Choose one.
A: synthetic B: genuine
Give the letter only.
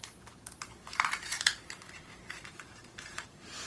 A